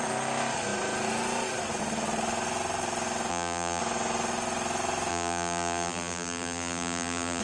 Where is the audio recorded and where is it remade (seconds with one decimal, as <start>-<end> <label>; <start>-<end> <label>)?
0.0-3.3 recorded; 3.3-3.8 remade; 3.8-5.1 recorded; 5.1-7.4 remade